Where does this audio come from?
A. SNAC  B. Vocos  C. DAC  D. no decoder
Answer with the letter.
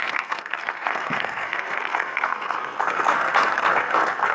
A